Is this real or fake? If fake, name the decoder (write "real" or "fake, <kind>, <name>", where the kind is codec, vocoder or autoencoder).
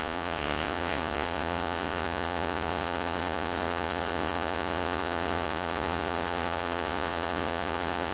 fake, vocoder, Vocos